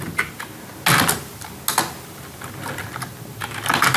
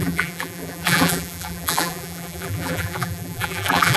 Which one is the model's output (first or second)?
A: second